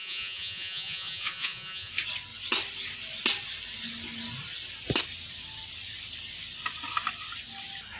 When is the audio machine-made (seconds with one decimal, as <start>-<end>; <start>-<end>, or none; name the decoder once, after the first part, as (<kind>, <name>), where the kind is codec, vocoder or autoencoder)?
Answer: 0.0-1.9 (vocoder, Vocos)

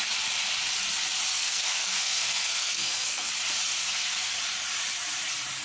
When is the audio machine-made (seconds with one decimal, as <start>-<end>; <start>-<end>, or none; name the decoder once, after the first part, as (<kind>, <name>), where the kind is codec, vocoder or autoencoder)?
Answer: 1.3-3.3 (codec, SNAC); 3.8-4.4

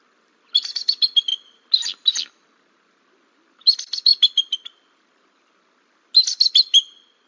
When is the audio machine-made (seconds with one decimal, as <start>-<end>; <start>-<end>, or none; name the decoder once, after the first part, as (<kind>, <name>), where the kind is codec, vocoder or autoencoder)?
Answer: none

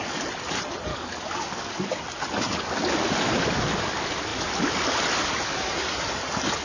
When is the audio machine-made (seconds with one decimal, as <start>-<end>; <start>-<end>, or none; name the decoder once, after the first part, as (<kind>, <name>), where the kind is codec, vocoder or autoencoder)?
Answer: 0.9-2.0 (codec, DAC)

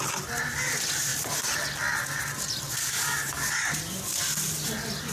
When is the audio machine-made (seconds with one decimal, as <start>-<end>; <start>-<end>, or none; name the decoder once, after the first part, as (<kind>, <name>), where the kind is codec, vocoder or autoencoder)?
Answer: 2.8-3.6 (codec, DAC)